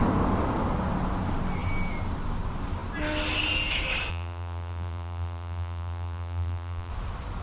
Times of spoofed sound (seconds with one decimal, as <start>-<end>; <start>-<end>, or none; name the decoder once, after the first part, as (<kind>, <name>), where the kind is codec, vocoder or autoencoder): 4.1-6.9 (vocoder, BigVGAN v2)